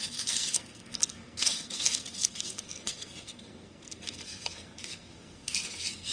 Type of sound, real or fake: fake